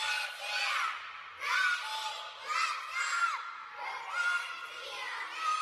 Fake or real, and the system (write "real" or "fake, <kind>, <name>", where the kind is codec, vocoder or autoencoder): real